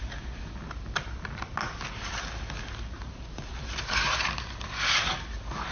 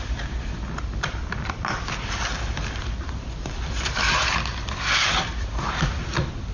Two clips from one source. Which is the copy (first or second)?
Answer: second